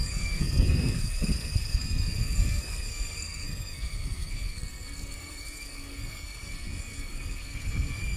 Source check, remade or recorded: remade